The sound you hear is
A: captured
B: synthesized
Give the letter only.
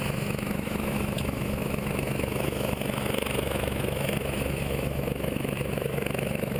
B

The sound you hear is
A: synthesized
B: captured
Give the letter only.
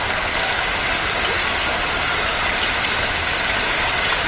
B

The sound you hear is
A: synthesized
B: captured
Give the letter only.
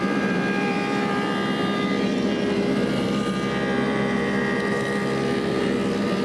A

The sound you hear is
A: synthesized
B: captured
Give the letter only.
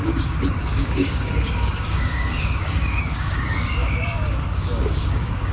A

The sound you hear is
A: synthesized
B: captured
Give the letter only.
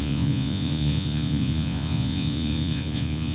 A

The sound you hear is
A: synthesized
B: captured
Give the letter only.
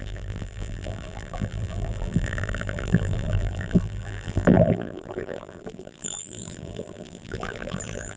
A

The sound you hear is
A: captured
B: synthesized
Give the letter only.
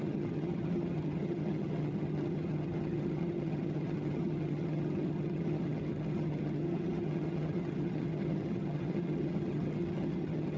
B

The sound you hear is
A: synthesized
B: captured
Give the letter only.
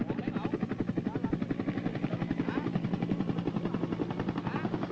B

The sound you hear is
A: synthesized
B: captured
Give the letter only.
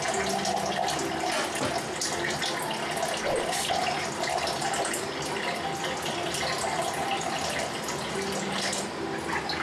B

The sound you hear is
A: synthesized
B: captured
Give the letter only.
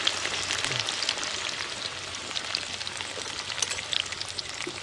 B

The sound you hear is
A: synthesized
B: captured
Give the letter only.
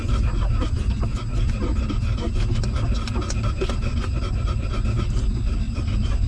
B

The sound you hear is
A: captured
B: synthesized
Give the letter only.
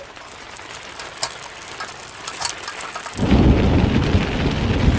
A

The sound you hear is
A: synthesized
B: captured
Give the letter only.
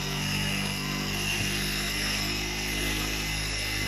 A